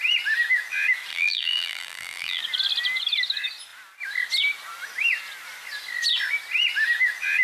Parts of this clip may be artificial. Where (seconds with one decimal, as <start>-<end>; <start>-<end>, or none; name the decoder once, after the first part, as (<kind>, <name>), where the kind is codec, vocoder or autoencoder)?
1.1-2.4 (vocoder, BigVGAN v2)